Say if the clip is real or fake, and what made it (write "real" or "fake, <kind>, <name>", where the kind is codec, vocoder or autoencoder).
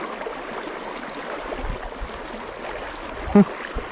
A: real